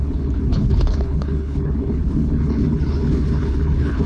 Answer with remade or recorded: remade